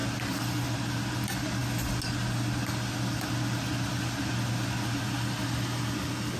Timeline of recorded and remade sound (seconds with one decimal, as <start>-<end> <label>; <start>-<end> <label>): 0.0-6.4 recorded